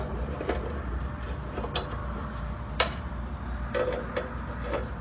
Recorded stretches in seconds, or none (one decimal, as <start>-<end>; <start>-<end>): 0.0-2.0; 3.0-5.0